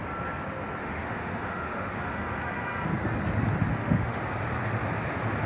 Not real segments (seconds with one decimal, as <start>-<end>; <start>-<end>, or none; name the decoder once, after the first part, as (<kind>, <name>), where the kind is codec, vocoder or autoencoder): 0.8-1.9 (autoencoder, DAC-VAE); 3.7-4.2